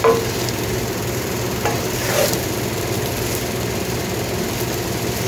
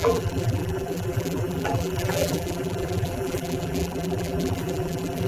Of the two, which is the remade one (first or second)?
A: second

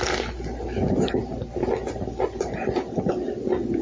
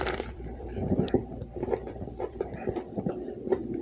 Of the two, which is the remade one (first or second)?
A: second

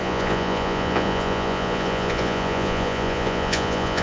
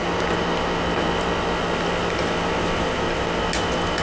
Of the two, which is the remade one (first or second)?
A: first